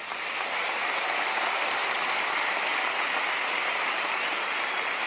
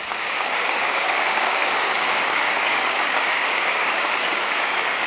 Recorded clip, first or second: first